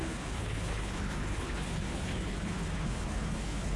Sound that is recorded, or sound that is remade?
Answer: remade